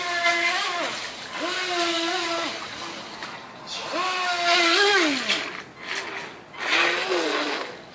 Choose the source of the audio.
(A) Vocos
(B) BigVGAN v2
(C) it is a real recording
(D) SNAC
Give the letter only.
C